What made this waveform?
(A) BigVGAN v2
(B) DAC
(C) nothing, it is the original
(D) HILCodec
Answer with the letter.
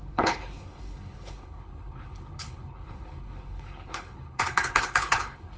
D